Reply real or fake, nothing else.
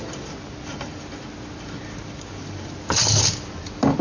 real